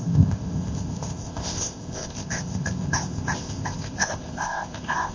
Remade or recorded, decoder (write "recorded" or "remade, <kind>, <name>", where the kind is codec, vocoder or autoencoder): remade, codec, ZipCodec